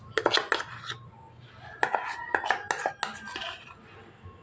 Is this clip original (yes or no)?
yes